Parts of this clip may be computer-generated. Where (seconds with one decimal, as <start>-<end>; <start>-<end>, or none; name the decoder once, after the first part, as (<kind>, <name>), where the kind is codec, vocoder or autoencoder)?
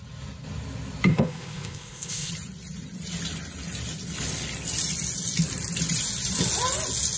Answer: 1.1-2.3 (codec, ZipCodec)